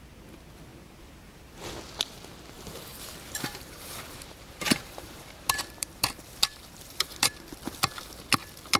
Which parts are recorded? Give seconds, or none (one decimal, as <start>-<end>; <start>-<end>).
0.0-0.7; 1.7-2.9; 7.6-8.8